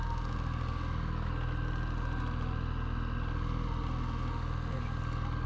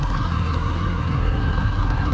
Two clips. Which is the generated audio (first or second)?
second